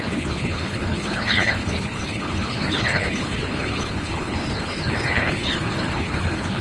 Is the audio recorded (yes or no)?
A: no